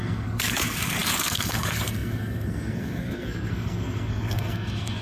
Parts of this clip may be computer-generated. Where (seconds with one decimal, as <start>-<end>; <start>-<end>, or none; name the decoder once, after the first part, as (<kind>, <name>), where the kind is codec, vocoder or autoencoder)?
0.0-5.0 (codec, SNAC)

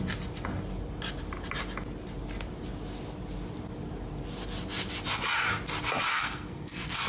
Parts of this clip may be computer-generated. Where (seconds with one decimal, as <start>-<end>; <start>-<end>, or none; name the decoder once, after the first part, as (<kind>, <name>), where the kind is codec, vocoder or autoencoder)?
6.1-7.1 (codec, SNAC)